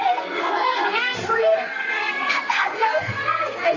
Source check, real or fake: fake